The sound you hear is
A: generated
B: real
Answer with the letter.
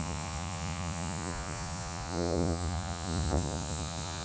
A